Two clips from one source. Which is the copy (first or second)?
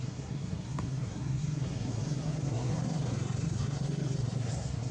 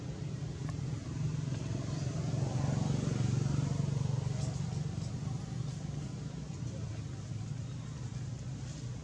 first